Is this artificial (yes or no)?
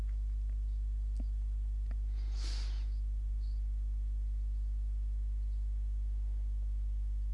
no